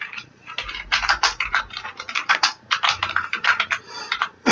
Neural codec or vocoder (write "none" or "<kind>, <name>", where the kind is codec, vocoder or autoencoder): vocoder, BigVGAN v2